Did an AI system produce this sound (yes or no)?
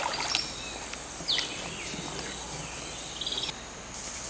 no